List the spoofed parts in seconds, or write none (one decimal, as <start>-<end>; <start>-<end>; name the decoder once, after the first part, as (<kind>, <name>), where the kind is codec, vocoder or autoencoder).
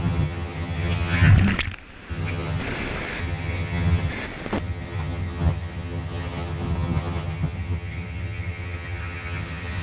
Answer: 0.0-1.3 (vocoder, HiFi-GAN); 2.1-2.6; 3.2-4.1; 4.6-9.8